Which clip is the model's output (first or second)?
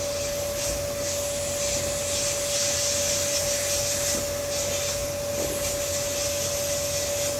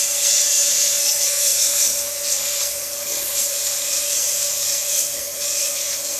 second